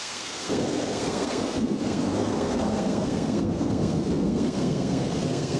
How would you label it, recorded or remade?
remade